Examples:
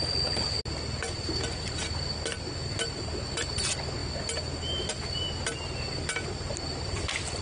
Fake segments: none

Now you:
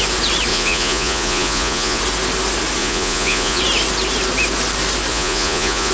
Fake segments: 0.5-2.0 (vocoder, Vocos); 2.8-3.6; 5.1-5.9

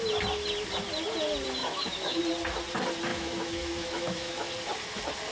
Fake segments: 1.6-2.2 (autoencoder, DAC-VAE); 3.1-4.5

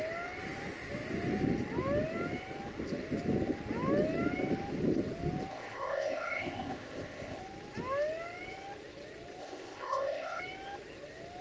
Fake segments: 5.5-7.4 (codec, ZipCodec); 9.4-10.4

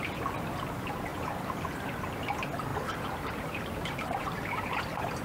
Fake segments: 1.1-1.9 (vocoder, BigVGAN v2); 2.7-4.8

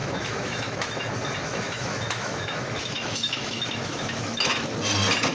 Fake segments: 0.0-1.1 (autoencoder, DAC-VAE); 1.5-4.7

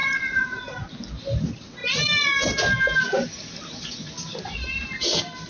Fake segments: 0.0-0.9 (vocoder, Vocos)

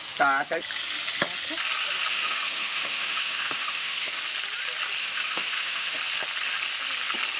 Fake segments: 2.1-4.2 (autoencoder, DAC-VAE); 5.0-6.0